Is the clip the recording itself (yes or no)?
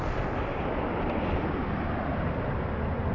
yes